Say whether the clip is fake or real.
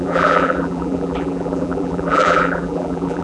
fake